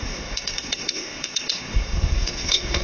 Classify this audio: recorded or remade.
remade